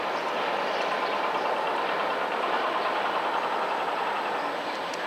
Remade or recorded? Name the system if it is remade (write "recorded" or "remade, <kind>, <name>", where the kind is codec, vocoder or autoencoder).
recorded